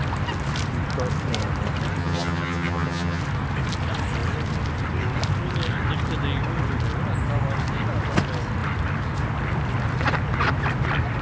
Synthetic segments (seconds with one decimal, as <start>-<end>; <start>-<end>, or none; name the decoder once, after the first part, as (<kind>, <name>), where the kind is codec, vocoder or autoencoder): 2.0-3.2 (vocoder, HiFi-GAN)